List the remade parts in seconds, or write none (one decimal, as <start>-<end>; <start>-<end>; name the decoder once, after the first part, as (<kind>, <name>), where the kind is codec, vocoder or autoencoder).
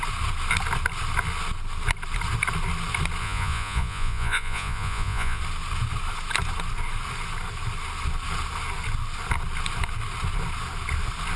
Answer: 3.2-5.4 (vocoder, Vocos)